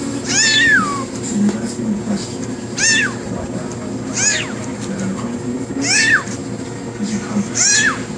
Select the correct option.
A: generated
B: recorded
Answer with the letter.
B